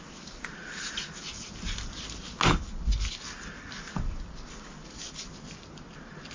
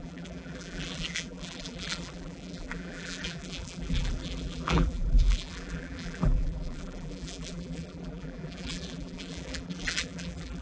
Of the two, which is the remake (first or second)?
second